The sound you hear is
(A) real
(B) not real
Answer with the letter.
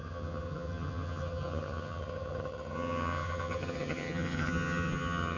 B